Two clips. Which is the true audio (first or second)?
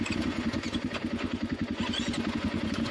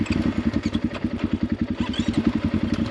second